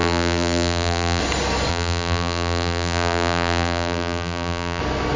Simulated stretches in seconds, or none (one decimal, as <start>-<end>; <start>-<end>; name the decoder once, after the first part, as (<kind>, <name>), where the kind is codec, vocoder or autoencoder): 0.0-1.2 (vocoder, BigVGAN v2); 1.7-4.8